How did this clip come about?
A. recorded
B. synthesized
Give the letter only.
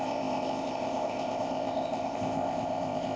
B